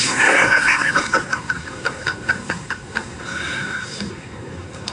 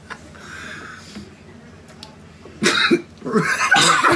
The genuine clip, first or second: second